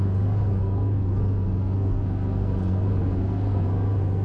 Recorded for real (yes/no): no